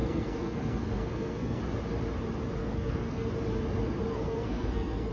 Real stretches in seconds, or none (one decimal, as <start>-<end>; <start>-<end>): 1.6-2.6; 3.3-4.1